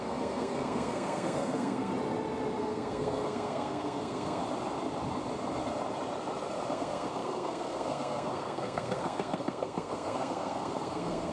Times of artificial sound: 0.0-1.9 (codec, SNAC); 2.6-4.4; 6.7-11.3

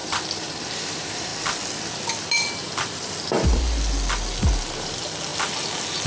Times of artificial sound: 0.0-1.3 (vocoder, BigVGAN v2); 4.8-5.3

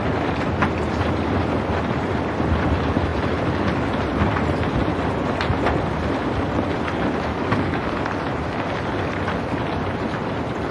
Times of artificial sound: 7.3-8.2 (codec, DAC)

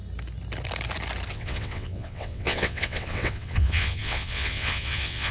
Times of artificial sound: 1.3-5.3 (vocoder, WaveNeXt)

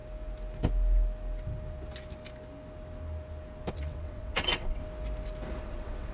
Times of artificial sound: 3.7-4.8 (vocoder, WaveNeXt); 5.6-6.1